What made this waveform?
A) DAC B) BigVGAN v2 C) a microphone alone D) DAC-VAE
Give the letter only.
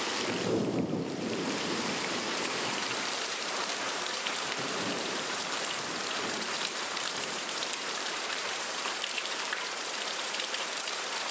B